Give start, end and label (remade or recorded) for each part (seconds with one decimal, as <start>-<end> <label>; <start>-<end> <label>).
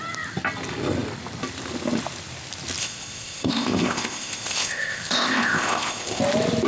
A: 0.0-2.8 recorded; 2.8-6.2 remade; 6.2-6.7 recorded